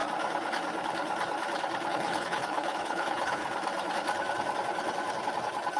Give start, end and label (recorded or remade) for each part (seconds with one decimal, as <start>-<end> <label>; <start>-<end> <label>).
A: 0.0-1.9 recorded; 1.9-3.4 remade; 3.4-5.8 recorded